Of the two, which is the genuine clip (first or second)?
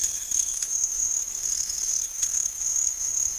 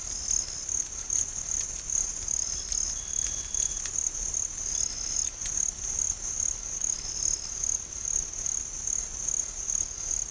second